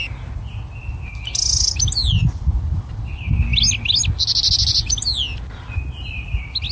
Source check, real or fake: real